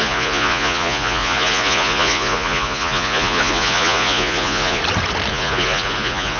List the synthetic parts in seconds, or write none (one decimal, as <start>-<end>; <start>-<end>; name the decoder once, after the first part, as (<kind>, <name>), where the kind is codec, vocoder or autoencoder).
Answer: 0.0-4.8 (vocoder, Vocos); 5.3-6.4

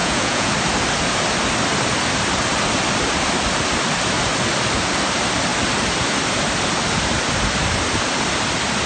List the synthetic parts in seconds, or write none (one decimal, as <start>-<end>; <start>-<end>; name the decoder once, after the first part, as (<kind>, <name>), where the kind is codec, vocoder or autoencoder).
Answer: 0.0-0.5 (vocoder, Vocos)

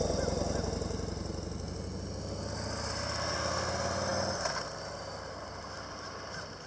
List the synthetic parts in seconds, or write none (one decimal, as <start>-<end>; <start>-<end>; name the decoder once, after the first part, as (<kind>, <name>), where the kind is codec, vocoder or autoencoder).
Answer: none

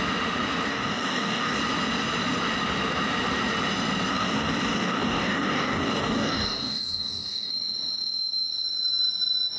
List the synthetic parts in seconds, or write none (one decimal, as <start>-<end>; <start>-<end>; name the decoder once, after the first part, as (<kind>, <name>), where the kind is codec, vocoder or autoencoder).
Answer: 0.7-1.6 (codec, DAC); 4.1-7.5

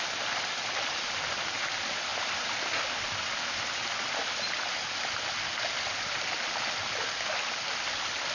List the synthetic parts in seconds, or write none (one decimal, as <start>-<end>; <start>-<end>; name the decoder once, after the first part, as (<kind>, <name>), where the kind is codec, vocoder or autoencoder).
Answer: 2.1-2.6 (vocoder, BigVGAN v2)

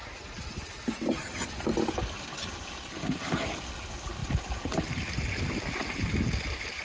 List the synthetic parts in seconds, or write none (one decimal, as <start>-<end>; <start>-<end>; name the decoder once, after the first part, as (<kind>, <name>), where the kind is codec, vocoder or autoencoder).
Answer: 4.2-6.1 (vocoder, BigVGAN v2)

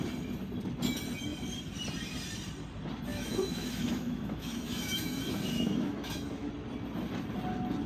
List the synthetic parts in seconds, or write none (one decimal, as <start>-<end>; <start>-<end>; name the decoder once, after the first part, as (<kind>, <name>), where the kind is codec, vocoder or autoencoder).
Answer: 3.1-6.5 (autoencoder, DAC-VAE)

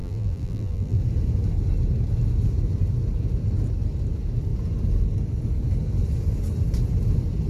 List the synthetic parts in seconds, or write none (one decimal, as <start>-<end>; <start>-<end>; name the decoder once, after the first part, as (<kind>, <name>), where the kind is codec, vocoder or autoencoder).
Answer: 0.0-1.0 (vocoder, BigVGAN v2)